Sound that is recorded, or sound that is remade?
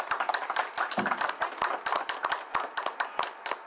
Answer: recorded